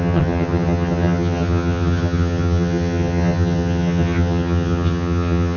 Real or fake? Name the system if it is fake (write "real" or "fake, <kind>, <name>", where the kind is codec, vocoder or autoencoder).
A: fake, vocoder, HiFi-GAN